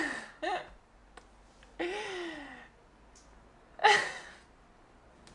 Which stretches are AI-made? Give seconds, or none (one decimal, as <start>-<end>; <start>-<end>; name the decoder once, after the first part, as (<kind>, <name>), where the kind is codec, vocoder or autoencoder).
none